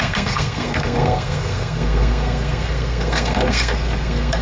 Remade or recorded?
remade